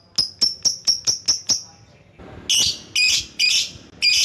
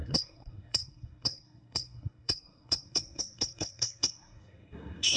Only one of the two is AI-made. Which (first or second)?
second